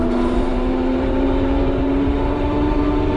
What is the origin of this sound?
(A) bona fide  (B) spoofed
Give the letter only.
B